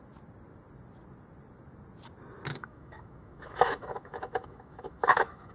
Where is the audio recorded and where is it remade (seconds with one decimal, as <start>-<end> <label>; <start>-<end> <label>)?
0.0-2.5 recorded; 2.5-5.5 remade